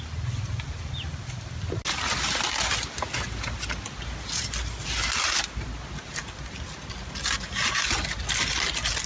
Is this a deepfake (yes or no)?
no